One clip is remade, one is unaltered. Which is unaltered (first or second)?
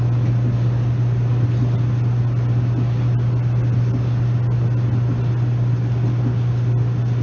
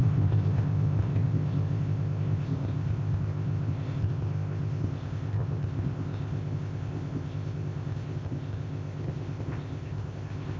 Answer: first